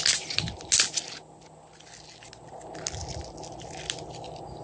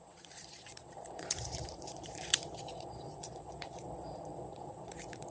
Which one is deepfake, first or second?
second